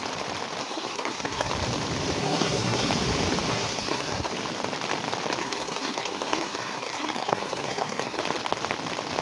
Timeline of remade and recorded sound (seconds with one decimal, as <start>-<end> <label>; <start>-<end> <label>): 0.0-0.6 recorded; 0.6-1.5 remade; 1.5-2.2 recorded; 2.2-2.9 remade; 2.9-3.5 recorded; 3.5-4.3 remade; 4.3-5.4 recorded; 5.4-8.2 remade; 8.2-9.2 recorded